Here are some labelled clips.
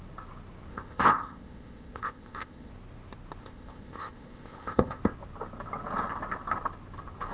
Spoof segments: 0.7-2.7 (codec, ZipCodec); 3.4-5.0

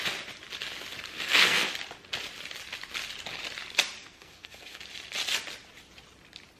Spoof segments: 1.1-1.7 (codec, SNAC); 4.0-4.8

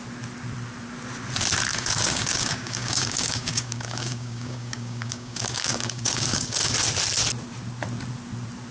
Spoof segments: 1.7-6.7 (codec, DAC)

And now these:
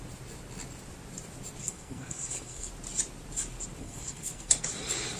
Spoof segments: 1.6-2.7 (codec, SNAC); 3.8-4.7

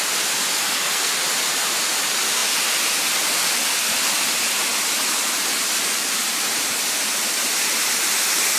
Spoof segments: 0.6-1.1 (codec, SNAC)

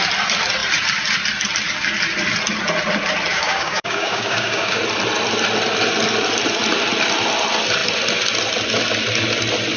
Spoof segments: 3.3-4.8 (codec, DAC)